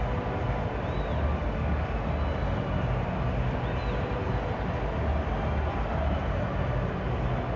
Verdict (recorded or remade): recorded